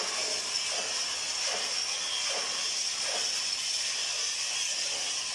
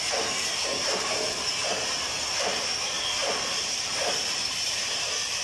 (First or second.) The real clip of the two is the first